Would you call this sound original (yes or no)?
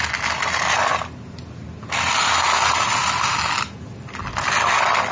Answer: yes